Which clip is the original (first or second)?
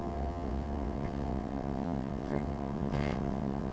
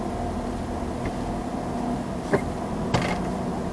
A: second